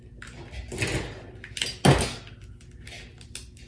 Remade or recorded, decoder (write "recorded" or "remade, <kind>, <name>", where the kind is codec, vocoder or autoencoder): recorded